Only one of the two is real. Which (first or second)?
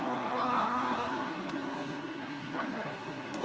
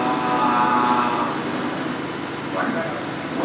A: second